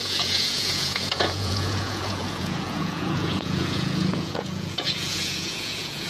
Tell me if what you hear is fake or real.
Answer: fake